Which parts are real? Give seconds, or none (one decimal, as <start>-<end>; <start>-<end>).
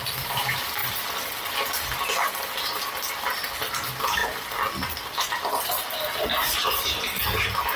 0.8-3.1; 4.2-5.6